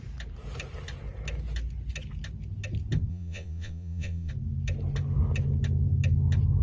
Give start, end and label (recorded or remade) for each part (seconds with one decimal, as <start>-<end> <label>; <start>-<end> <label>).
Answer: 0.0-3.1 recorded; 3.1-4.3 remade; 4.3-6.6 recorded